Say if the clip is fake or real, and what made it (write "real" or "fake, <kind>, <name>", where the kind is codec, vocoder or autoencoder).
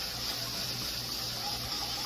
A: real